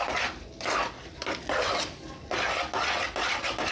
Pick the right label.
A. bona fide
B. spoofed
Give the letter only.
A